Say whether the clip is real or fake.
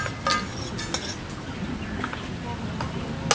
real